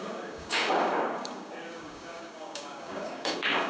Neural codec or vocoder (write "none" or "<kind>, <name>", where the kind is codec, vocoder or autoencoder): codec, DAC